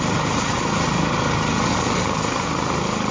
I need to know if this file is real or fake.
real